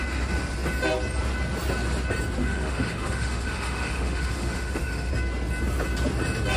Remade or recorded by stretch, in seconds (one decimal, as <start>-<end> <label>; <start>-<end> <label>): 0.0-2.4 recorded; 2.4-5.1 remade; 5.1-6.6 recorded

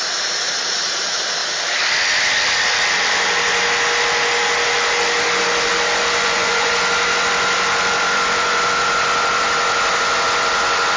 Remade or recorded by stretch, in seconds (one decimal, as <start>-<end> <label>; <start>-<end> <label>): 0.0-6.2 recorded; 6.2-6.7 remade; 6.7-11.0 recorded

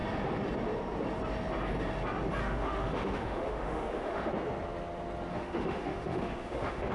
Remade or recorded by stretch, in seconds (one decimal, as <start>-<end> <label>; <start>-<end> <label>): 0.0-2.4 recorded; 2.4-4.3 remade; 4.3-5.3 recorded; 5.3-6.9 remade

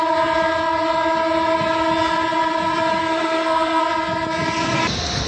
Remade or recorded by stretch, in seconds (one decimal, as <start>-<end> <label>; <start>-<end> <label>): 0.0-3.0 recorded; 3.0-3.8 remade; 3.8-5.3 recorded

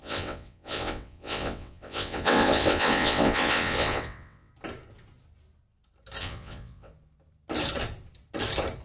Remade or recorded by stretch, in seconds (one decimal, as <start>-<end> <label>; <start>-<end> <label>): 0.0-4.5 remade; 4.5-6.2 recorded; 6.2-6.9 remade; 6.9-8.8 recorded